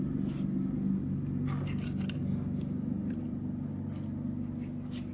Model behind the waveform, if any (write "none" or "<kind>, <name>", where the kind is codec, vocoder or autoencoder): none